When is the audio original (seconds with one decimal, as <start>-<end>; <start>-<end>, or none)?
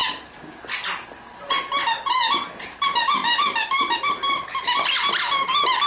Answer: 0.0-5.9